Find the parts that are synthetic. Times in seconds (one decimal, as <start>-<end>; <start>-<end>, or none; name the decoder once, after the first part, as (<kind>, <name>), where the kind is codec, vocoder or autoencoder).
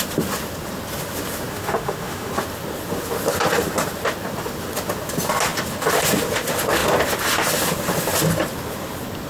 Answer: 1.5-2.3 (autoencoder, DAC-VAE)